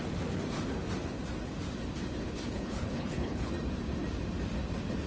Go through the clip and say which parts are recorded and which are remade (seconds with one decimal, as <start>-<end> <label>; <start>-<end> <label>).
0.0-2.2 recorded; 2.2-3.5 remade; 3.5-5.1 recorded